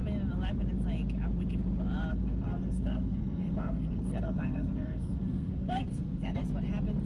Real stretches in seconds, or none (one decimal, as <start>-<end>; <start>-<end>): 0.0-2.1; 6.4-7.1